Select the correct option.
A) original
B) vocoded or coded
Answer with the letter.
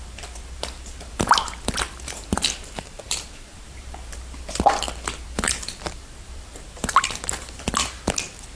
B